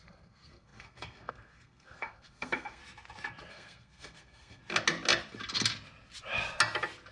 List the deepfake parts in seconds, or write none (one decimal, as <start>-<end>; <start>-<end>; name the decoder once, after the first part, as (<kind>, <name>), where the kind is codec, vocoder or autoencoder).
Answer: 0.0-2.8 (codec, SNAC); 3.5-4.6